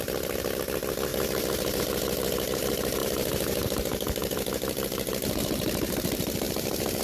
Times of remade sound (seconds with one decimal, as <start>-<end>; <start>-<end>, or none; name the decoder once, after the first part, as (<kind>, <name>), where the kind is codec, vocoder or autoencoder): 1.1-1.8 (vocoder, BigVGAN v2); 3.0-7.0